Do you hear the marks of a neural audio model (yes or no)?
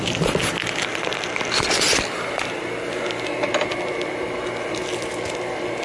no